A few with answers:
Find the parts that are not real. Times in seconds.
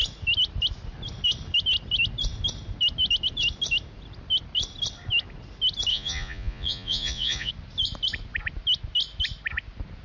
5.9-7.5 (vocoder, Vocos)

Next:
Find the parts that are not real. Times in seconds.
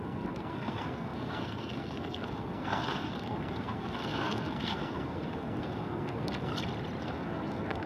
0.0-6.5 (codec, SNAC); 7.0-7.9